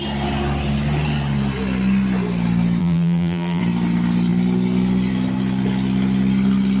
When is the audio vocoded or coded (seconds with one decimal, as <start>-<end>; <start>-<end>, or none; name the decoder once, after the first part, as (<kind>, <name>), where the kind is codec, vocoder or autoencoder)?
2.8-3.6 (vocoder, BigVGAN v2)